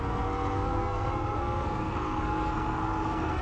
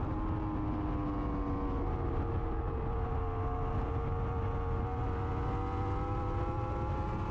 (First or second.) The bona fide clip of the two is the second